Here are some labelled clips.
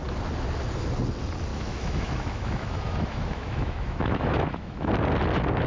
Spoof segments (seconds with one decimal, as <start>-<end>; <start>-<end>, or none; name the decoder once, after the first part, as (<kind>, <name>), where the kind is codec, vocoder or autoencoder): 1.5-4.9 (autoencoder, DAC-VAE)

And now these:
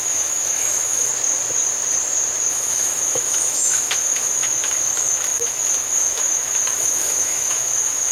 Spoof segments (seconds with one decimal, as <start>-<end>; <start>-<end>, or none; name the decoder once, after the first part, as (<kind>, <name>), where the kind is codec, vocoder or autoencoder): 0.0-1.1 (autoencoder, DAC-VAE); 2.5-8.1

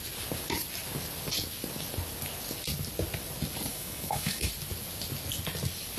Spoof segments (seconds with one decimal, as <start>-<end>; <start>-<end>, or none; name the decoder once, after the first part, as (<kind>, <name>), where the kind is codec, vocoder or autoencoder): 3.7-4.5 (autoencoder, DAC-VAE)